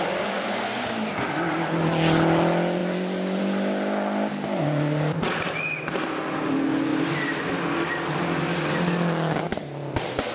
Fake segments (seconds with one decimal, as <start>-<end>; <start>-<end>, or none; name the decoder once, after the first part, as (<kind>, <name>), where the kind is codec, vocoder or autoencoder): 6.9-7.5 (vocoder, BigVGAN v2)